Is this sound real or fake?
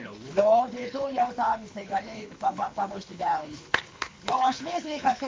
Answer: fake